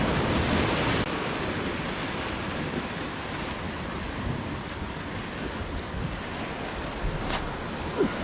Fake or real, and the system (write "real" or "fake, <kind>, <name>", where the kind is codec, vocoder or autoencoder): real